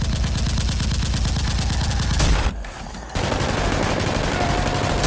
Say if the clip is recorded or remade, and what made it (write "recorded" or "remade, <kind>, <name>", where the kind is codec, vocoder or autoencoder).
recorded